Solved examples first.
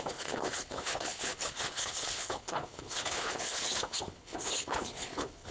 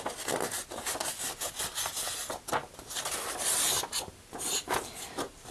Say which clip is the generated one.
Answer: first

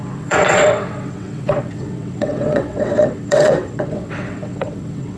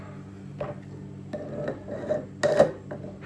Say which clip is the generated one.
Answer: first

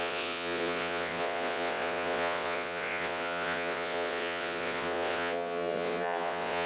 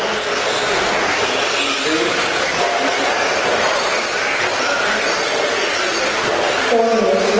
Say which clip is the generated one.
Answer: first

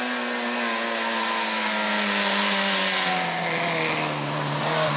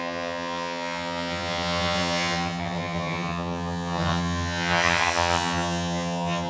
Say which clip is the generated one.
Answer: second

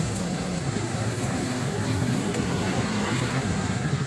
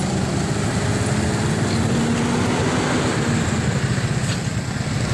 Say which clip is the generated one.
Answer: first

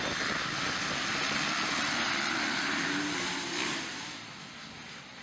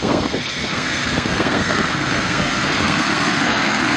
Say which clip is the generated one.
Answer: second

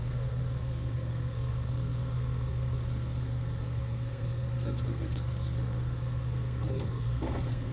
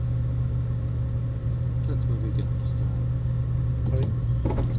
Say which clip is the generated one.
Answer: first